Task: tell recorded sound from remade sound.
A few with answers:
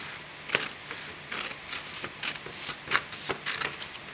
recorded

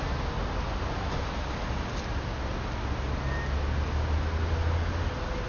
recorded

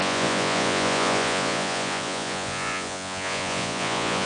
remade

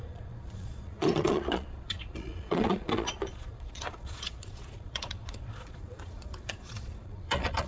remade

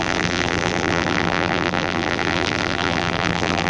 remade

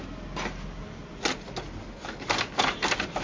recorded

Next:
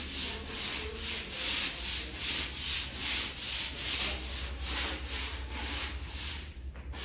recorded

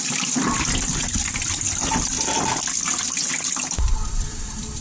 remade